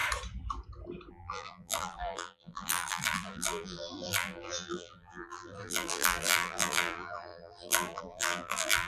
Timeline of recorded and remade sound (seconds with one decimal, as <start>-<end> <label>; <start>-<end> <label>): 0.0-1.1 recorded; 1.1-8.9 remade